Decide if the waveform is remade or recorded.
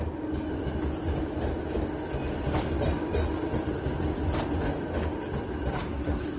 recorded